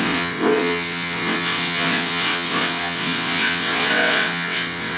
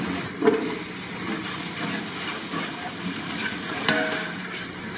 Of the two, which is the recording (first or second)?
second